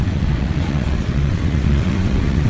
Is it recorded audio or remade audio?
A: remade